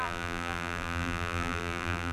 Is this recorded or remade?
remade